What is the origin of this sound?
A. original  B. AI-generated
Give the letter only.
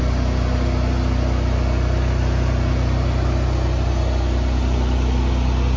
A